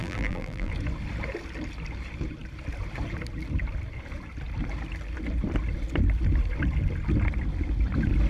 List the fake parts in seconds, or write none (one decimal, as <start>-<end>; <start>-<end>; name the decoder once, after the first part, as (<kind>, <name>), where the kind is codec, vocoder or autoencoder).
0.0-0.7 (vocoder, BigVGAN v2)